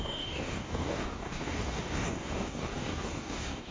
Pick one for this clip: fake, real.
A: fake